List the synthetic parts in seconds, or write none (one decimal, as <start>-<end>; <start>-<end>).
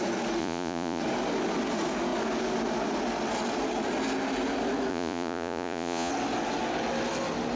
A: 0.4-1.0; 4.9-6.1